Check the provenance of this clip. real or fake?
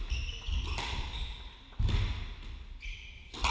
real